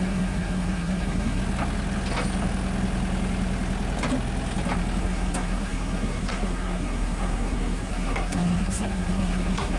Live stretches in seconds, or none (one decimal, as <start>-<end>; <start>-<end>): 1.4-5.0